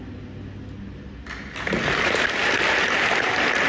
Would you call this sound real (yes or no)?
yes